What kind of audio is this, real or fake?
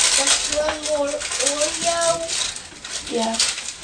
real